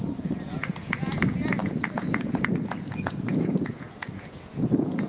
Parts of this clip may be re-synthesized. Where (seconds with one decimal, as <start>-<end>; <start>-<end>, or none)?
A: 0.0-5.1